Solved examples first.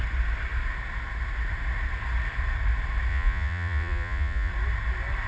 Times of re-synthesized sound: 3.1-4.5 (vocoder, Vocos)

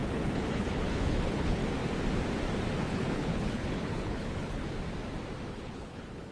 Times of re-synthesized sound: 0.0-1.6 (codec, HILCodec); 2.8-4.6; 5.5-6.3

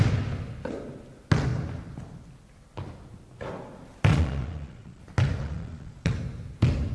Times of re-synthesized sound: 4.1-5.0 (vocoder, Vocos); 5.4-6.1

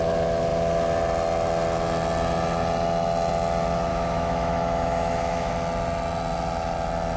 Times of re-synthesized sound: 3.9-5.5 (autoencoder, DAC-VAE)

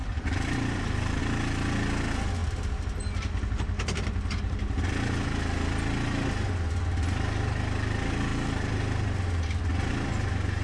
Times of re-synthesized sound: 0.0-1.2 (vocoder, BigVGAN v2)

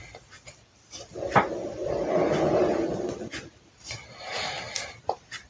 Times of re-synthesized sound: none

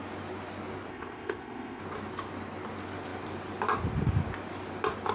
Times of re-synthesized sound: 0.9-1.8 (codec, ZipCodec)